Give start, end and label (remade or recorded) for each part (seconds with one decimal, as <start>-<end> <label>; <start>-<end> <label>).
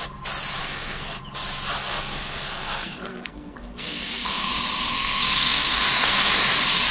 0.0-0.6 recorded; 0.6-1.2 remade; 1.2-1.9 recorded; 1.9-4.5 remade; 4.5-4.9 recorded; 4.9-6.3 remade; 6.3-6.9 recorded